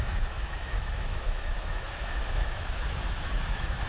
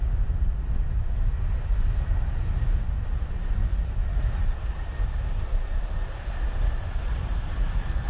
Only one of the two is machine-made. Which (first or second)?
first